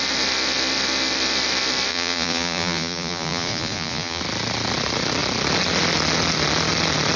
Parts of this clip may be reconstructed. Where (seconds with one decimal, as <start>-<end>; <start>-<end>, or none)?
1.9-4.2